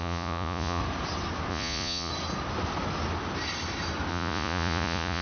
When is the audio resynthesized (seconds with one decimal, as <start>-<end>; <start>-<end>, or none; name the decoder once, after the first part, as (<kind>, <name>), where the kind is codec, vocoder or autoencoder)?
0.0-0.8 (vocoder, Vocos); 1.5-2.1; 4.1-5.2